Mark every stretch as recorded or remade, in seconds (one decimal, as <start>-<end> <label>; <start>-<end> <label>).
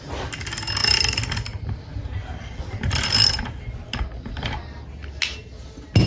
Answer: 0.0-0.8 recorded; 0.8-3.4 remade; 3.4-6.1 recorded